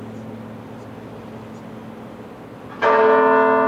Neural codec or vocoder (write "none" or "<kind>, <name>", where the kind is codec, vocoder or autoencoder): none